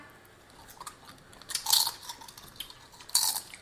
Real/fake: real